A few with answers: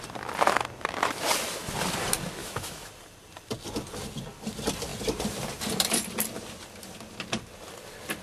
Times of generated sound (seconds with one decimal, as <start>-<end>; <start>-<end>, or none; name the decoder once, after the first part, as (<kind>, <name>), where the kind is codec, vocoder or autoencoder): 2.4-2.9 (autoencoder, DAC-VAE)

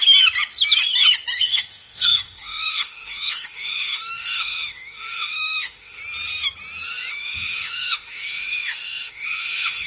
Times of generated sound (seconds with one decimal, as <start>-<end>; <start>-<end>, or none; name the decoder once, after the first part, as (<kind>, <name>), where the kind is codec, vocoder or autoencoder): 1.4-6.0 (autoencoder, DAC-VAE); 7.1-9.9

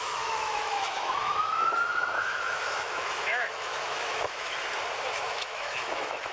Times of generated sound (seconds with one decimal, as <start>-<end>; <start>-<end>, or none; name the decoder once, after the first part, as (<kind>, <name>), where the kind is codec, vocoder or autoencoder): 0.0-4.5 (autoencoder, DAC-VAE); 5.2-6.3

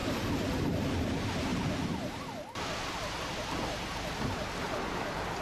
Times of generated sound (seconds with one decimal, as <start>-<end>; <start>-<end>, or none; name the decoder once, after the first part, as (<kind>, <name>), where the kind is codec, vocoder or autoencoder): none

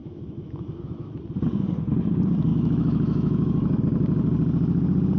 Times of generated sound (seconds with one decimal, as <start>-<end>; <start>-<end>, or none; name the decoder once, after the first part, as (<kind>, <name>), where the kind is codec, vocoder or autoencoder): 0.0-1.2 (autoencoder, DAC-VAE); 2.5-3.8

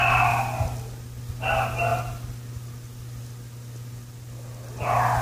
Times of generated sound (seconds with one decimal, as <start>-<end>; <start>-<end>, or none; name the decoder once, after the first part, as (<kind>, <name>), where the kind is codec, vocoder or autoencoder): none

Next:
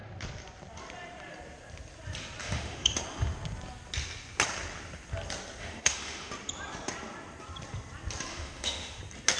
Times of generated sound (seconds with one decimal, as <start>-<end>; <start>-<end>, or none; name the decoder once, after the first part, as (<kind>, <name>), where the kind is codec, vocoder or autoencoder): 2.4-3.0 (autoencoder, DAC-VAE); 5.6-6.3; 8.3-9.0